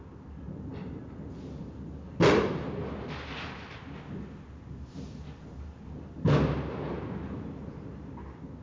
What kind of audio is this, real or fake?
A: real